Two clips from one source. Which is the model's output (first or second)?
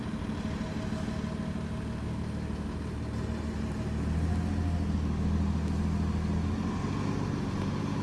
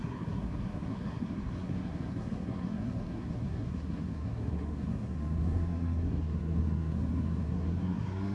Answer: second